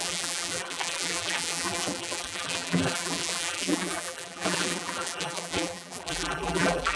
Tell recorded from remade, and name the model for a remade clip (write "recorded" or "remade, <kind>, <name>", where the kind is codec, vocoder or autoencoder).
remade, vocoder, BigVGAN v2